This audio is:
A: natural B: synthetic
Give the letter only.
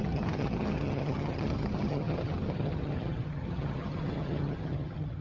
B